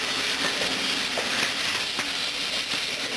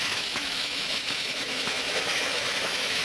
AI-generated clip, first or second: second